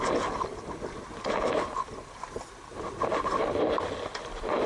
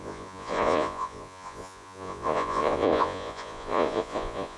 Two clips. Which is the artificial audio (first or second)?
second